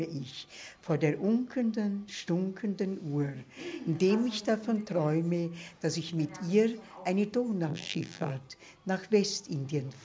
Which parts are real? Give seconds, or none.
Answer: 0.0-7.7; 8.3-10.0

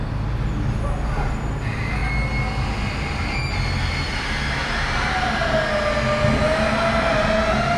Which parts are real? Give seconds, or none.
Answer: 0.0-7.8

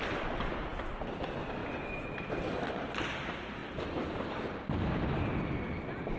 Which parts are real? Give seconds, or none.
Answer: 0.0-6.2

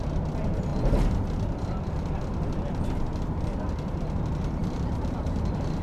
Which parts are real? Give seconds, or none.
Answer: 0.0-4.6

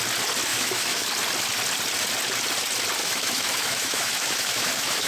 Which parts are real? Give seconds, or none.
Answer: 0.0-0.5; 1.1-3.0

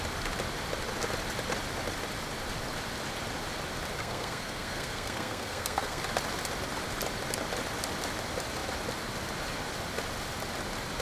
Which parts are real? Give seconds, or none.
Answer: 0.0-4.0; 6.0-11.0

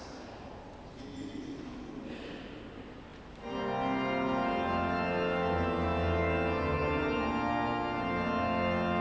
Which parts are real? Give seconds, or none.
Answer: 0.0-9.0